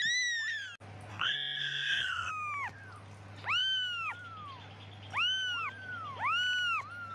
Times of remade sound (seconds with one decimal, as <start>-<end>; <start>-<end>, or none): 1.1-2.3